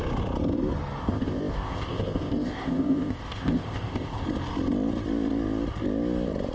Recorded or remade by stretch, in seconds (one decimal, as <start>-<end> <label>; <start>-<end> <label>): 0.0-1.0 recorded; 1.0-4.2 remade; 4.2-6.5 recorded